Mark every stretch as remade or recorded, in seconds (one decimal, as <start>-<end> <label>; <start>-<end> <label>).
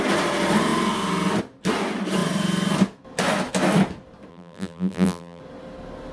0.0-4.3 recorded; 4.3-5.4 remade; 5.4-6.1 recorded